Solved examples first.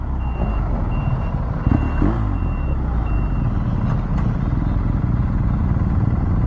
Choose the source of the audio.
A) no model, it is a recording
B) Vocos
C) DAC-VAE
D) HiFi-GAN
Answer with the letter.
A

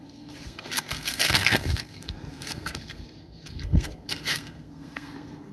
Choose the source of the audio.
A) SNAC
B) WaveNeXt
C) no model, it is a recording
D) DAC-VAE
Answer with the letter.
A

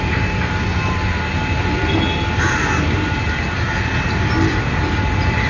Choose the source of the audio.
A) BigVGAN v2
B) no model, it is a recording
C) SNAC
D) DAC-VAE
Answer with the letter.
B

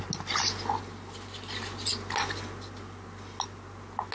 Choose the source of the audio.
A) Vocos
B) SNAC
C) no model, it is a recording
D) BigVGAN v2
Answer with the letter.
C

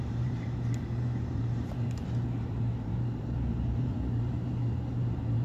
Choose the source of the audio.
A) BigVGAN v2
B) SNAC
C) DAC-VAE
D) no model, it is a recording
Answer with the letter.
A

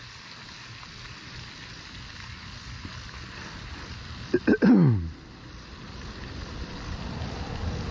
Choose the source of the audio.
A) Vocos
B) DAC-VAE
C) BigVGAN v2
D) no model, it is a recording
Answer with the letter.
D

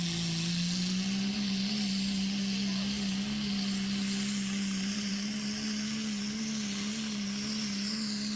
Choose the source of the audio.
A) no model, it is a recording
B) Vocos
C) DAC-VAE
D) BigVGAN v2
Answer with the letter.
A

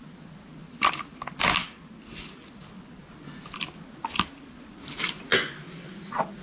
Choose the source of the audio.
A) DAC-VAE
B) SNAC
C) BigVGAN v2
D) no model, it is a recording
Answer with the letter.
D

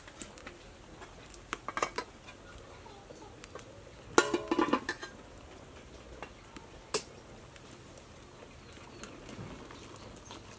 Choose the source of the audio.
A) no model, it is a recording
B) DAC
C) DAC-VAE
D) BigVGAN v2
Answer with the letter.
A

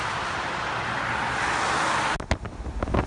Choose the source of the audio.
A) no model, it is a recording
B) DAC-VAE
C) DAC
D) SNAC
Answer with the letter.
A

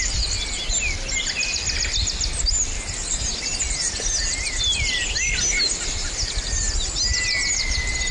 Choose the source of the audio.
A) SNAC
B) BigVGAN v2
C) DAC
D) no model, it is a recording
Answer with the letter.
D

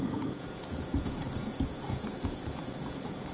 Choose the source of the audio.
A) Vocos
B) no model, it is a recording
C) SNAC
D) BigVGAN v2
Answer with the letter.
A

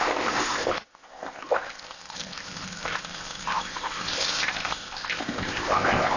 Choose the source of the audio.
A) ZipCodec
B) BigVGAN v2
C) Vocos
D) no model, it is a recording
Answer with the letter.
A